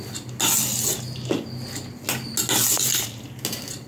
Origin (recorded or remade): recorded